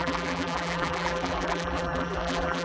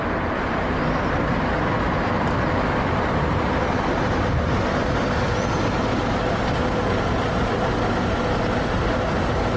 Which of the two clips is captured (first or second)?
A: second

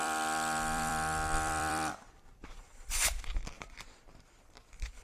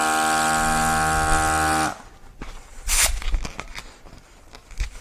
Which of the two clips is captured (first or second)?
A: second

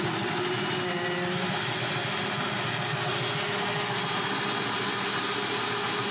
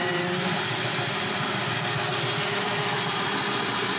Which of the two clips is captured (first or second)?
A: first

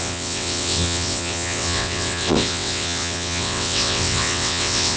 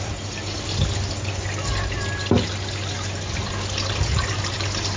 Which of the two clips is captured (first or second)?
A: second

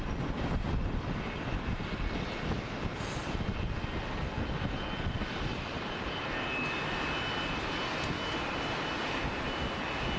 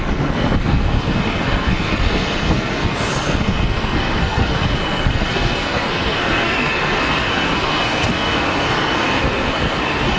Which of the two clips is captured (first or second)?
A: first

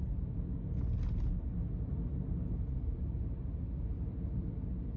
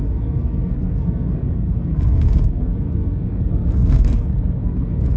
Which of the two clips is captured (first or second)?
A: first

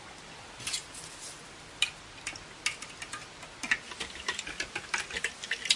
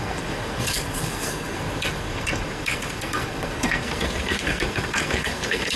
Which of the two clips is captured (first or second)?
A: first